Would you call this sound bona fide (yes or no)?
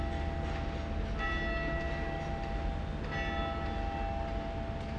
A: yes